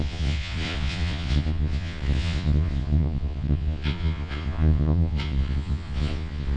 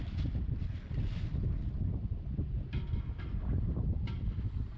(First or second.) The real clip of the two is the second